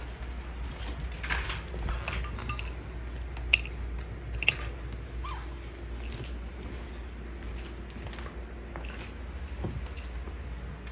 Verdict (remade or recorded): recorded